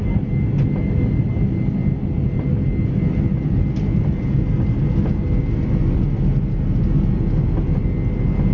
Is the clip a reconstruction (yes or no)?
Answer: no